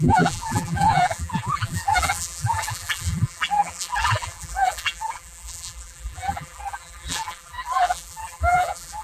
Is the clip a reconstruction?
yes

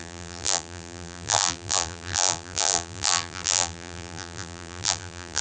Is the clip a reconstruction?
yes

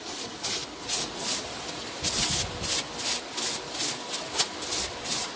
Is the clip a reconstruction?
no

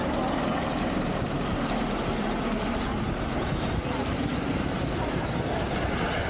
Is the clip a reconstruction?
yes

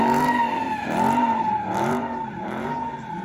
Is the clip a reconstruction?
yes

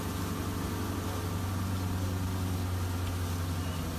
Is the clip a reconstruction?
no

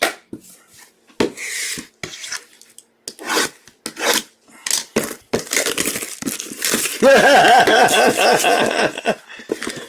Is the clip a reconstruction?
no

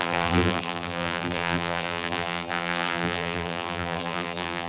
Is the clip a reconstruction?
yes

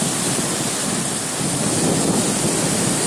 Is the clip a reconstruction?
no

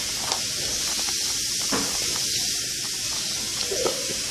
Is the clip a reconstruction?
no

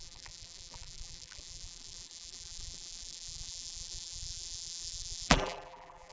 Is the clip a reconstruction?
yes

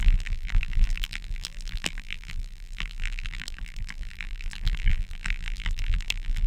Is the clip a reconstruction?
yes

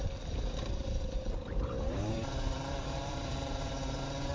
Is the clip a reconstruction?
yes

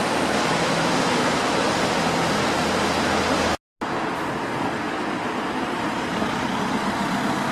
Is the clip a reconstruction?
no